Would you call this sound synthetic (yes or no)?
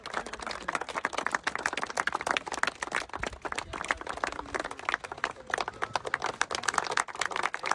no